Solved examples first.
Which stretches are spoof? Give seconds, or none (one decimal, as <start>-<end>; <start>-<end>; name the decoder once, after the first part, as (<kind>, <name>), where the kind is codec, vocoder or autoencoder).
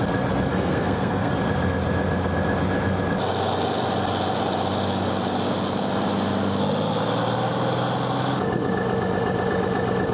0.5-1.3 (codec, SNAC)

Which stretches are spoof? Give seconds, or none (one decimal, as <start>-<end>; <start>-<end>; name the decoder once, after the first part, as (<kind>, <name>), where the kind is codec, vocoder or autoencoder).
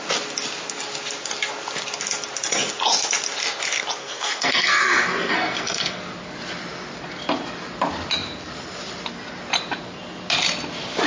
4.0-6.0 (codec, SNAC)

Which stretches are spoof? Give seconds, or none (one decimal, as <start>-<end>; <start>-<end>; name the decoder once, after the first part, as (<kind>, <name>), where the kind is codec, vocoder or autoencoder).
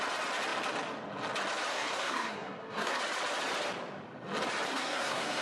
1.7-3.0 (codec, SNAC); 4.7-5.4